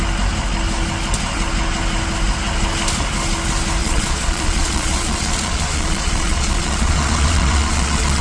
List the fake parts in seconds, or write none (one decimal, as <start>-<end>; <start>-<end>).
3.8-8.2